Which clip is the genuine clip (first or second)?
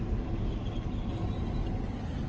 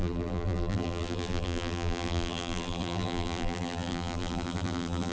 first